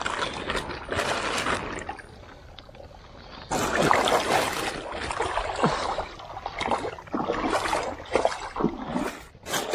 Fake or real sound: real